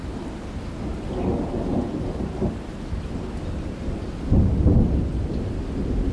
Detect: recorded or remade recorded